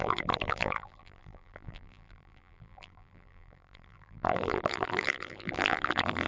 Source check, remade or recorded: remade